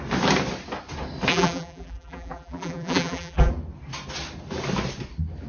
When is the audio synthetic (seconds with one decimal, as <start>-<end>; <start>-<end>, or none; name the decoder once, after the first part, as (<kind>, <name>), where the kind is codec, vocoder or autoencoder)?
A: 1.3-3.5 (vocoder, BigVGAN v2)